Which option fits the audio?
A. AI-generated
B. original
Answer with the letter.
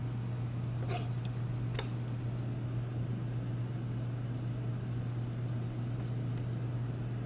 B